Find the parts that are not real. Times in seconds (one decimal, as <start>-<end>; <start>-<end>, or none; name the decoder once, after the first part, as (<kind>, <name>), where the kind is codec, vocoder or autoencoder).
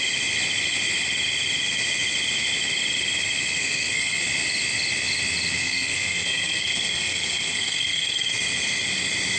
3.6-4.2 (codec, SNAC); 5.6-8.3